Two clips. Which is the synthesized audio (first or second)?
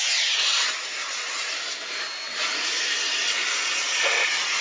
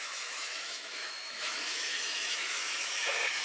second